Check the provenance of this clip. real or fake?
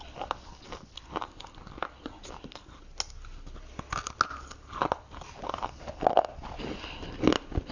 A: real